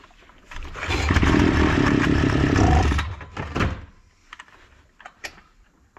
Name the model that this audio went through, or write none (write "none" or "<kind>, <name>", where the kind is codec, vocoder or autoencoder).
vocoder, BigVGAN v2